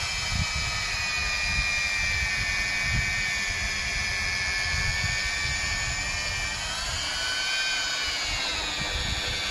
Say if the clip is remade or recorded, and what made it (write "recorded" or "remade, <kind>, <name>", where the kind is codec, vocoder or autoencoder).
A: recorded